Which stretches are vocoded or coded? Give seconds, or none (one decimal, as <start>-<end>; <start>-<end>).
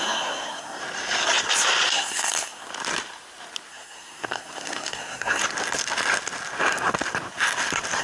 0.0-0.8; 1.9-2.7; 3.7-5.4